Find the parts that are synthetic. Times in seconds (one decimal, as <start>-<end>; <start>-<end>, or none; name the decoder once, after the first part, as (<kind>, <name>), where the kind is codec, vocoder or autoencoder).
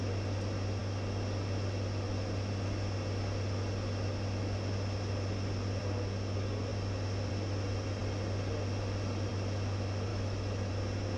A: 10.1-10.7 (autoencoder, DAC-VAE)